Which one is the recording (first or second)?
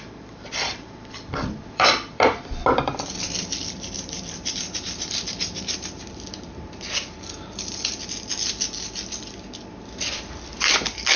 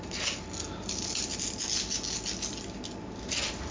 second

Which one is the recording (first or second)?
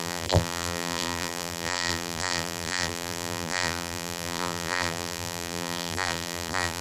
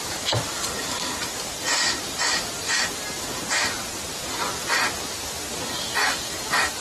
second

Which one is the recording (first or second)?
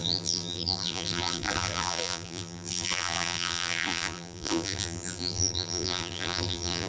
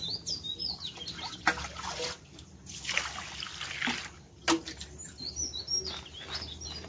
second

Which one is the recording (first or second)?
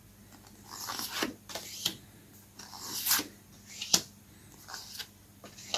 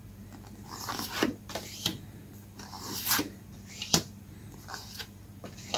first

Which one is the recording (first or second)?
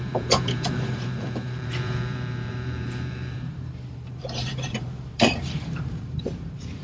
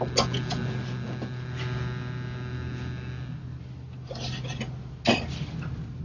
second